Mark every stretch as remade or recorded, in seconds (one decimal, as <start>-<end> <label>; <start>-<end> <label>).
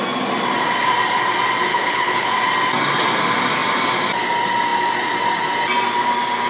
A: 0.0-1.7 recorded; 1.7-2.3 remade; 2.3-6.5 recorded